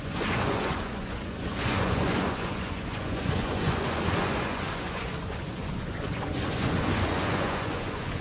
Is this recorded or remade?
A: remade